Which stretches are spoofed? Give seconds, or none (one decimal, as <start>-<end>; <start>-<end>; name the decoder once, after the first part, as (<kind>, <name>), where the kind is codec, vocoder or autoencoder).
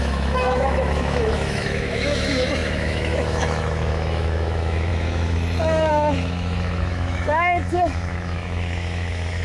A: 0.0-9.4 (autoencoder, DAC-VAE)